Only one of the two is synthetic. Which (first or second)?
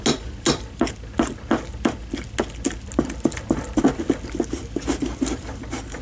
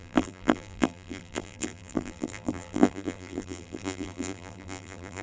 second